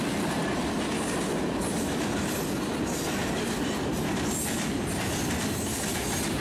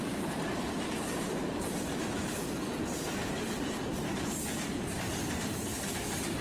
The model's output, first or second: second